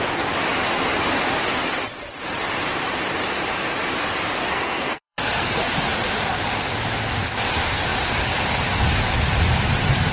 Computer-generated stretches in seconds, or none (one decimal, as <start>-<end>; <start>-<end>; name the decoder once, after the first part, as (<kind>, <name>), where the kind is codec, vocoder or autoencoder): 4.4-5.5 (codec, SNAC)